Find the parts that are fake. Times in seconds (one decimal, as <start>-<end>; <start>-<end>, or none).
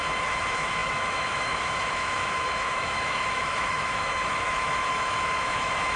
0.0-6.0